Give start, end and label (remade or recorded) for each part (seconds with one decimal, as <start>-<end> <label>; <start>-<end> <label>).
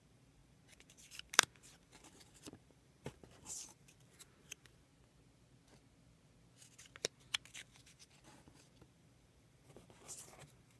0.0-4.9 remade; 4.9-7.5 recorded; 7.5-10.8 remade